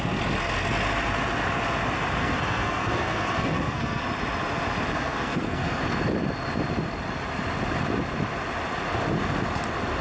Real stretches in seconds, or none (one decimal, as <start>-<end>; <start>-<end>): 0.0-2.2; 4.0-4.9; 5.8-10.0